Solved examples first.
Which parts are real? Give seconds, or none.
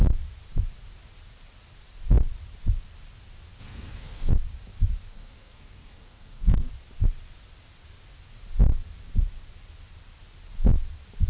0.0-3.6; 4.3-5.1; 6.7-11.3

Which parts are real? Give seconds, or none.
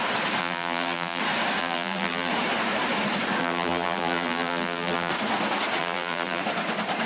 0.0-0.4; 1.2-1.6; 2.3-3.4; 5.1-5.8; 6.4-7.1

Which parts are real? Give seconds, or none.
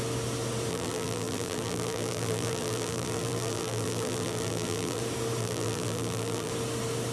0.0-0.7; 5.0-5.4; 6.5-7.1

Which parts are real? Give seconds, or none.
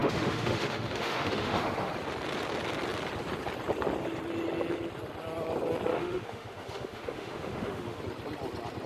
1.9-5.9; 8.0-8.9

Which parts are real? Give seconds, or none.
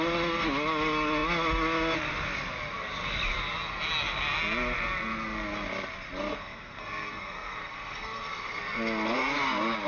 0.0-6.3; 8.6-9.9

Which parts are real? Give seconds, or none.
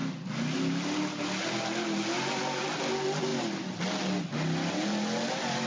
0.0-5.7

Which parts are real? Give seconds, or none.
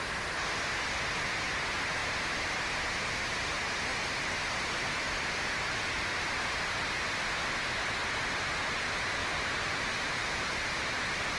0.0-9.2; 11.0-11.4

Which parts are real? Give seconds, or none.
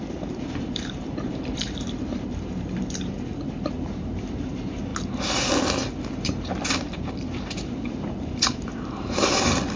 4.9-6.6